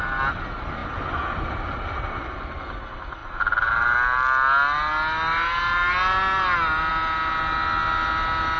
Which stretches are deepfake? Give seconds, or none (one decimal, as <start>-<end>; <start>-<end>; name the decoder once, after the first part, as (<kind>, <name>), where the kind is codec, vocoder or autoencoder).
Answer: none